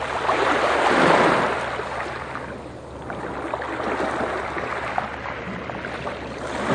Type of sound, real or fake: real